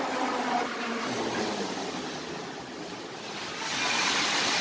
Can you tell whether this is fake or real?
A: real